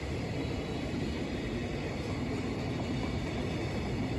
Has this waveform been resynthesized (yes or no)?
no